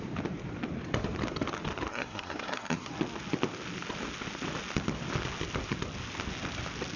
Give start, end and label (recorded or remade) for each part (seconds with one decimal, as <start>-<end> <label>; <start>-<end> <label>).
0.0-1.9 recorded; 1.9-2.9 remade; 2.9-7.0 recorded